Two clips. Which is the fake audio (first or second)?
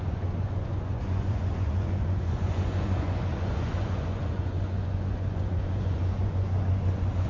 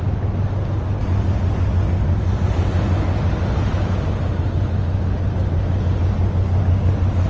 first